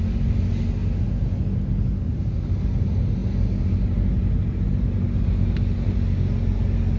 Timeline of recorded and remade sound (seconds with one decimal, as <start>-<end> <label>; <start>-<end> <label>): 0.0-7.0 recorded